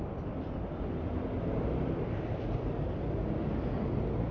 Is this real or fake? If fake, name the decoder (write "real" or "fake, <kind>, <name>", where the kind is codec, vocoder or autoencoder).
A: real